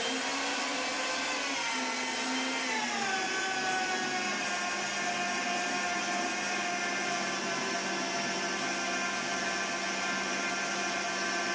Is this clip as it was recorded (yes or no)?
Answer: yes